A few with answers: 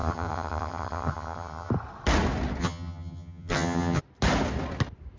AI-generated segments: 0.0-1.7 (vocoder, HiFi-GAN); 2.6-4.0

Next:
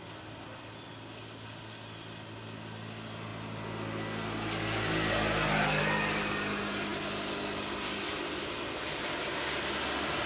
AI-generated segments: none

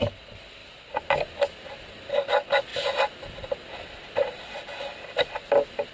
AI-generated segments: none

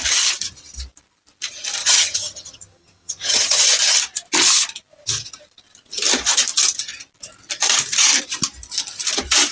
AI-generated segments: 1.8-3.6 (vocoder, HiFi-GAN)

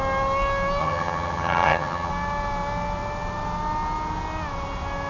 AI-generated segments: 0.8-2.1 (vocoder, HiFi-GAN)

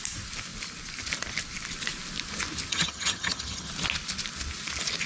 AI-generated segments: 2.7-3.7 (vocoder, HiFi-GAN)